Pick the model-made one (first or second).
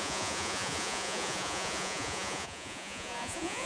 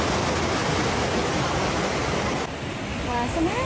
first